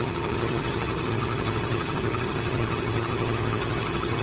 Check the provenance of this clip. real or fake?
fake